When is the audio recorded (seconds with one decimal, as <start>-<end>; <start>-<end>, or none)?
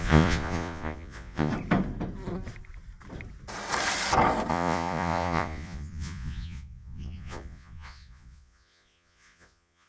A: 1.5-4.5